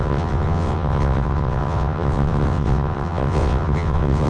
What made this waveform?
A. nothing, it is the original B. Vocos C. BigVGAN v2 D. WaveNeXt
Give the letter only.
D